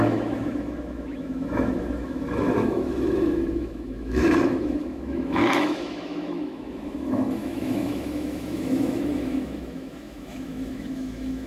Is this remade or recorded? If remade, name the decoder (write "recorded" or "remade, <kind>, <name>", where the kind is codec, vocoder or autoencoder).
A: remade, autoencoder, DAC-VAE